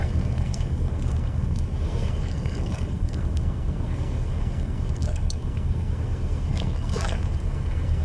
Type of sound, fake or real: fake